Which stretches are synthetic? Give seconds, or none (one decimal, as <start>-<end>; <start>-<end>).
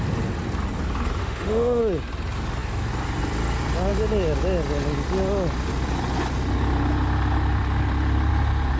1.2-1.8